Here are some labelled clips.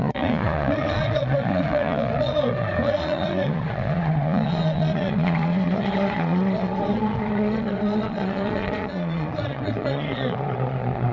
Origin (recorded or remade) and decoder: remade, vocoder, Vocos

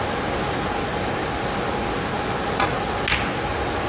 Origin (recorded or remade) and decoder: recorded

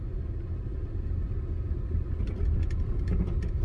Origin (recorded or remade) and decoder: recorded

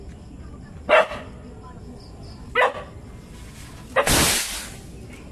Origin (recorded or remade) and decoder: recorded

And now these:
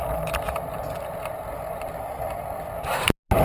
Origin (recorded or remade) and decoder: recorded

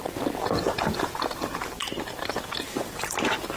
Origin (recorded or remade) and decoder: recorded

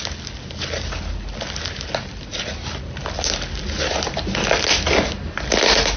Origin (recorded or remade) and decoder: recorded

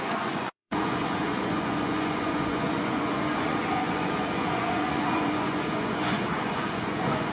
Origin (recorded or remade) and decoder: remade, vocoder, Vocos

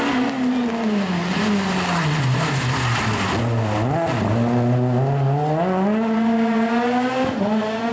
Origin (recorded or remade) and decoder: recorded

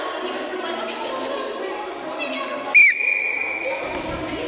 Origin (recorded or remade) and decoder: recorded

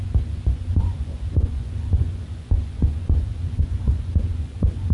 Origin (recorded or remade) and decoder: remade, vocoder, Vocos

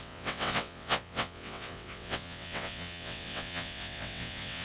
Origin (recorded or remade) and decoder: remade, vocoder, WaveNeXt